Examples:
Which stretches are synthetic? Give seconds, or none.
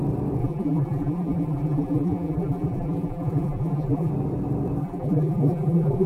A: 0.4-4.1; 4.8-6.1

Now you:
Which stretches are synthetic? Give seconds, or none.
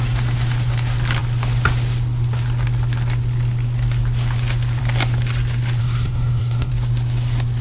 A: 5.8-6.7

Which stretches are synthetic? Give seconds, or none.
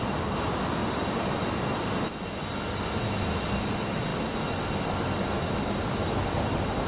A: none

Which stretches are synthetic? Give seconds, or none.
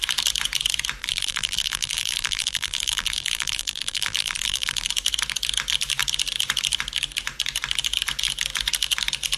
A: 1.0-4.9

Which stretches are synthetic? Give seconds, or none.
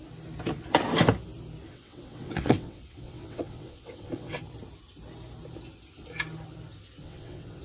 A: 1.7-4.4; 7.0-7.6